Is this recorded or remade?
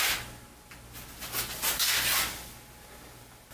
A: recorded